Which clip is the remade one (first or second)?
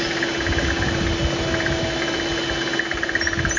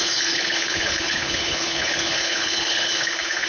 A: second